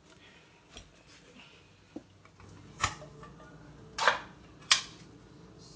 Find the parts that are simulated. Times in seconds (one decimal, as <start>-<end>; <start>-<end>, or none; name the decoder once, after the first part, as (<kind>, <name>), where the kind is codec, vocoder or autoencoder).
none